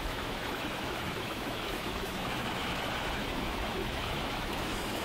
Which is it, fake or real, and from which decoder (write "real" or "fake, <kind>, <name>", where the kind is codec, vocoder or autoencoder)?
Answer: fake, autoencoder, DAC-VAE